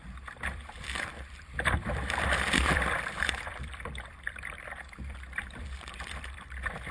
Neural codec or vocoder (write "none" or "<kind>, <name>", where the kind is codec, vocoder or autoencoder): vocoder, BigVGAN v2